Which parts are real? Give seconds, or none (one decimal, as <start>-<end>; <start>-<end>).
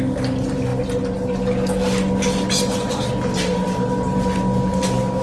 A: 0.0-5.2